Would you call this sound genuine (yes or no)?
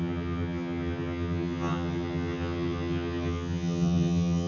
no